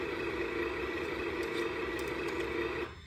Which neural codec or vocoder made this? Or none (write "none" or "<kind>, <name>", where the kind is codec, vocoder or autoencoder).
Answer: none